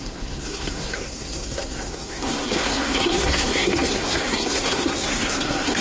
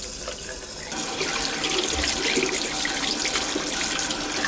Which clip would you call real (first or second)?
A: second